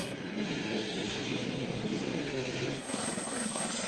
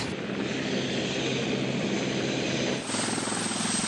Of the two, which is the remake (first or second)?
first